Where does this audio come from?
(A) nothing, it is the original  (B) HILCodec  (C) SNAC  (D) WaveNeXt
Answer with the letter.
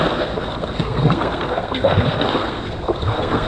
C